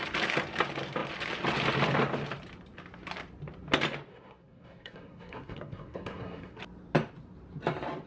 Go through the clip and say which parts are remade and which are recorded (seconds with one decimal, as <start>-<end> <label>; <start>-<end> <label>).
0.0-4.1 recorded; 4.1-6.6 remade; 6.6-8.1 recorded